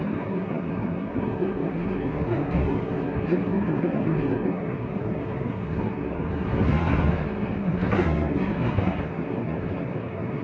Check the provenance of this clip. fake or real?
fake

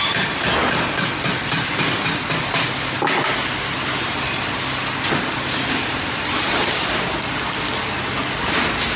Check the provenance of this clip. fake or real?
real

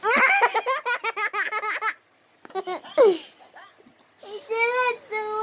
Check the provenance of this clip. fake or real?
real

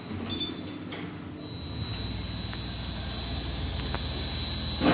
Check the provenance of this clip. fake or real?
real